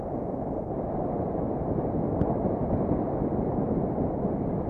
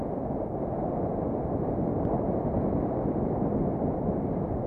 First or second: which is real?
second